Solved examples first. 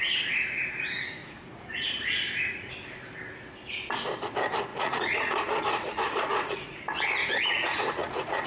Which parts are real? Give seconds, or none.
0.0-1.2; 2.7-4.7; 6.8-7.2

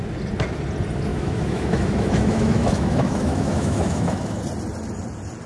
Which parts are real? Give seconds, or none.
0.0-1.1; 4.4-5.5

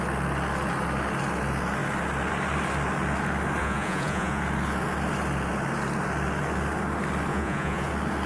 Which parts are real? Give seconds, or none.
0.0-3.6; 4.4-7.3; 7.9-8.3

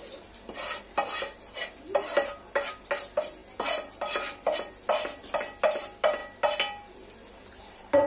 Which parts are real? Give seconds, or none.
0.0-8.1

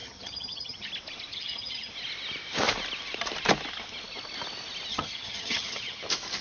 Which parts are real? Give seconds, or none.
0.9-1.3; 1.9-4.9; 6.0-6.4